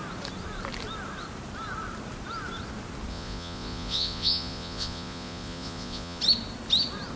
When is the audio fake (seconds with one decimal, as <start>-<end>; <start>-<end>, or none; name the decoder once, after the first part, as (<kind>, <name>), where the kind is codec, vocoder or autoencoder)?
3.1-6.2 (vocoder, Vocos)